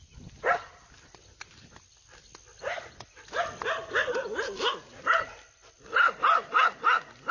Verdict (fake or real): real